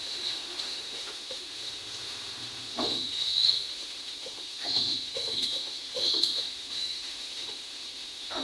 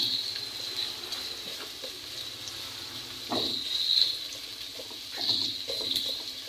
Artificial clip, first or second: first